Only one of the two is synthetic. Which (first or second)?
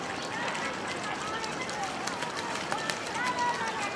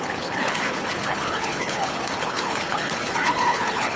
second